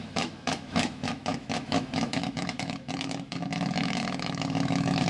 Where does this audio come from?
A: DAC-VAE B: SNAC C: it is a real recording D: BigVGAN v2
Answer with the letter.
A